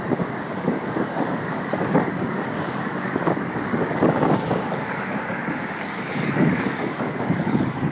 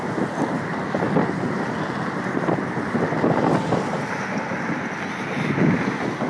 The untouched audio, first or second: second